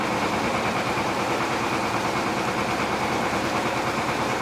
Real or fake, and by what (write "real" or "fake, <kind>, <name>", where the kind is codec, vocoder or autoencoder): fake, vocoder, BigVGAN v2